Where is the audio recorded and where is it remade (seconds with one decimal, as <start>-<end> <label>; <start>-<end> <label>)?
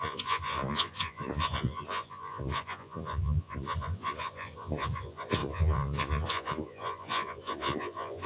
0.0-8.3 remade